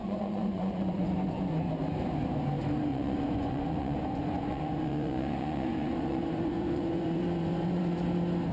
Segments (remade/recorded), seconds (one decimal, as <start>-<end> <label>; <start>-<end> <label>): 0.0-1.7 remade; 1.7-2.9 recorded; 2.9-7.9 remade; 7.9-8.5 recorded